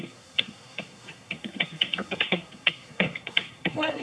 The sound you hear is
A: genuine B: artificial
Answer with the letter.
B